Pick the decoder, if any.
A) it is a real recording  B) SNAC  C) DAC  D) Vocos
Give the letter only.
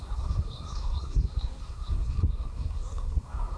B